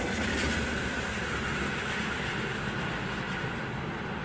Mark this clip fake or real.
real